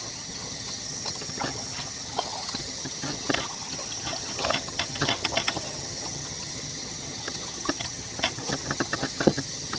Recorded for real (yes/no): no